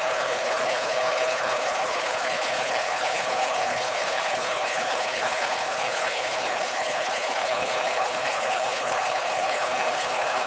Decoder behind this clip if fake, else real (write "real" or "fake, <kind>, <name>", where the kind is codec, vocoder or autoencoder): fake, codec, HILCodec